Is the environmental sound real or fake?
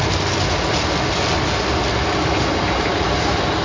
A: real